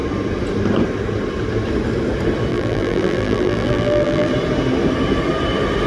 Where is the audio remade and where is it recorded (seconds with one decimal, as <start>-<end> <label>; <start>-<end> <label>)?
0.0-2.5 recorded; 2.5-4.3 remade; 4.3-5.9 recorded